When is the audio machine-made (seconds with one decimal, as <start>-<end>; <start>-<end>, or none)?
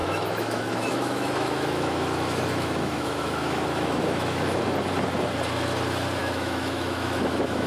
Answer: 0.0-4.6; 6.2-7.7